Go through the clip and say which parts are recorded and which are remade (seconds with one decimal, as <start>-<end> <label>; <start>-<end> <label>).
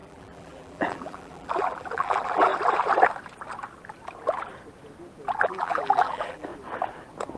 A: 0.0-2.5 remade; 2.5-5.4 recorded; 5.4-6.5 remade; 6.5-7.4 recorded